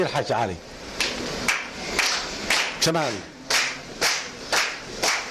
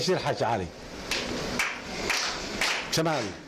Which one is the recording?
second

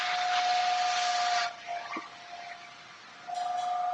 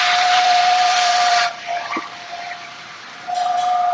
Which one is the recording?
first